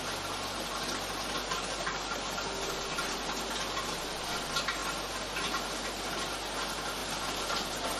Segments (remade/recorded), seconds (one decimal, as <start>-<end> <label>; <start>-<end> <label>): 0.0-8.0 recorded